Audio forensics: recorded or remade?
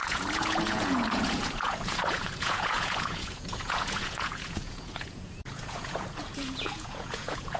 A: remade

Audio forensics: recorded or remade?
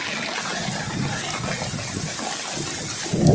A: recorded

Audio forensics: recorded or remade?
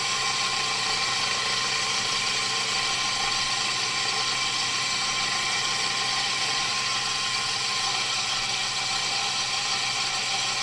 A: recorded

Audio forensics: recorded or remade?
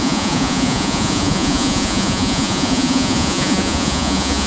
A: remade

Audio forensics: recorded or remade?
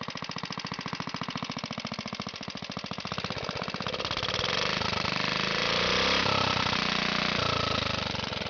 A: recorded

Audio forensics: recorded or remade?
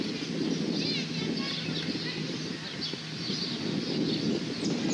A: recorded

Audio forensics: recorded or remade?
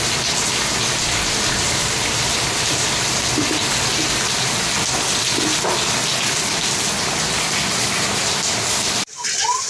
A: recorded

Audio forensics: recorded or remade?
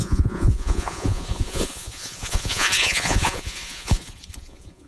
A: remade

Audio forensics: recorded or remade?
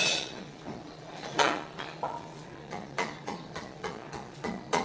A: remade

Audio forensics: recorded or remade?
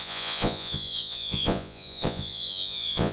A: remade